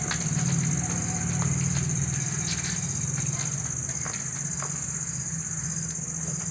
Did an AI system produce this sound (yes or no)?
no